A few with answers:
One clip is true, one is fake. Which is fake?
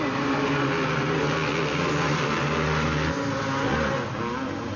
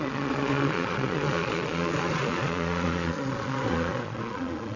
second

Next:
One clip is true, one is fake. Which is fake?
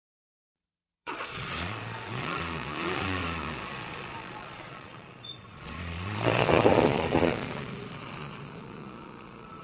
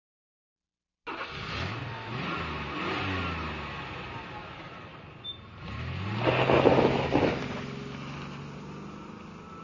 first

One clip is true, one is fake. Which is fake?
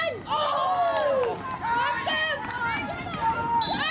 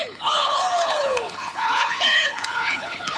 second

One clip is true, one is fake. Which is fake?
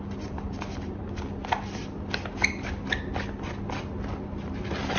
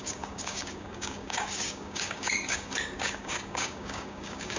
second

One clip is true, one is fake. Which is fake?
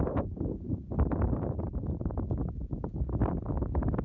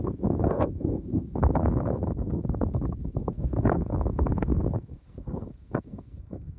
second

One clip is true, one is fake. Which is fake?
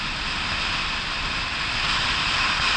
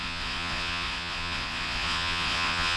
second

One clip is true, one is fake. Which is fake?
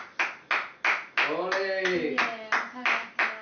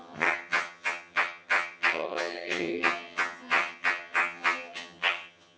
second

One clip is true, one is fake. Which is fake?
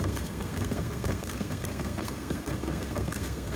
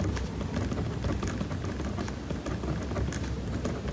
first